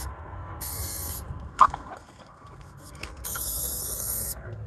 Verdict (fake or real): fake